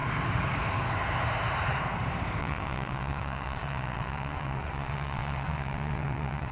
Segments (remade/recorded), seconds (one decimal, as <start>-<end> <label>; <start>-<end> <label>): 0.0-2.4 recorded; 2.4-6.5 remade